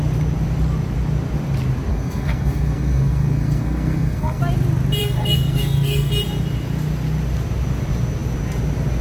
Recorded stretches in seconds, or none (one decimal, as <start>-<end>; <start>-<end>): 0.0-1.9; 4.4-5.0; 6.1-9.0